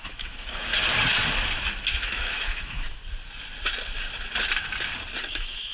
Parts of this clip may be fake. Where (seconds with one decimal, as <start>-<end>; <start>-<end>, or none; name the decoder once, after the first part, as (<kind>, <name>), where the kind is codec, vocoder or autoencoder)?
0.0-0.7 (autoencoder, DAC-VAE); 1.9-3.0; 5.2-5.7